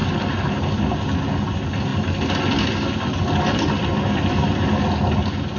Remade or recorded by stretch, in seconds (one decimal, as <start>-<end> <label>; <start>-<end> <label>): 0.0-5.6 recorded